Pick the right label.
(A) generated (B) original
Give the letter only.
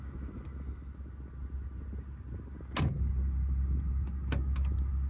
B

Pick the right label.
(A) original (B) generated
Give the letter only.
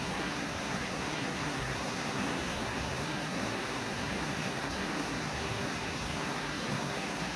B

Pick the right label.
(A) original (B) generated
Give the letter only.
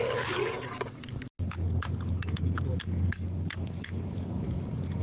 B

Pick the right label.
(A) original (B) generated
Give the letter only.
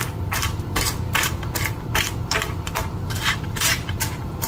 B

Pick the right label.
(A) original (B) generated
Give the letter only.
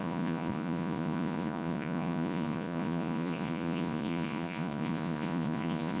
B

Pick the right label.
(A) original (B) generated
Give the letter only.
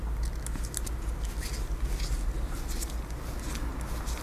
A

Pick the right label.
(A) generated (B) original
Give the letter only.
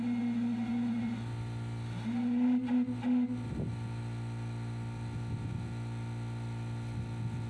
B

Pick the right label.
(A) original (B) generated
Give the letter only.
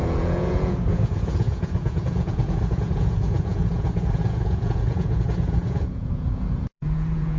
B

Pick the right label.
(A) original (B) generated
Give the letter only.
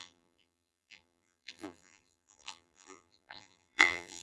B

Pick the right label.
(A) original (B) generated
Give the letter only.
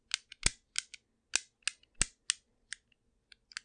A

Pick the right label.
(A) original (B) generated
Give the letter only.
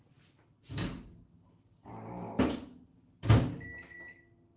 A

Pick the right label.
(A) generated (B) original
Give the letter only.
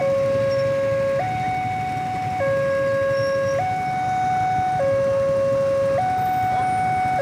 B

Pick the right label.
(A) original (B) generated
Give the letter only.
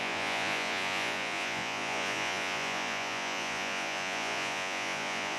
B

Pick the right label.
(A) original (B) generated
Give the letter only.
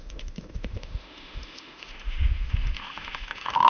B